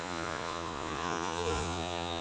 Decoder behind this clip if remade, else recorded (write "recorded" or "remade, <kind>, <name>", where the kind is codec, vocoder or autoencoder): remade, vocoder, Vocos